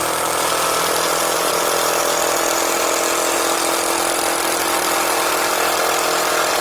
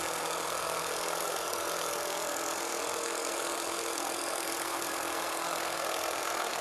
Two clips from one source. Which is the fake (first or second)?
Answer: second